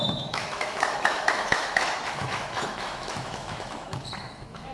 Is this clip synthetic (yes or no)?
yes